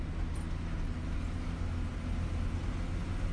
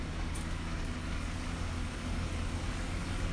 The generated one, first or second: second